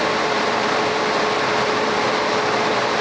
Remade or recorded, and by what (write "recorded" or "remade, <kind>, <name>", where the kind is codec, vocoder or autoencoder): remade, vocoder, BigVGAN v2